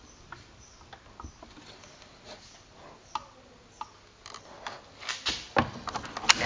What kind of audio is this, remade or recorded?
recorded